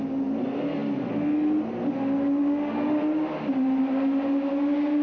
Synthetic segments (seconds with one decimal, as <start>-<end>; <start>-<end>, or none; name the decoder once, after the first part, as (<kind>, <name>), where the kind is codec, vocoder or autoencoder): none